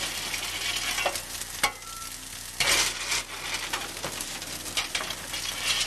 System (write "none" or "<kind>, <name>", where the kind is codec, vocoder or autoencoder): none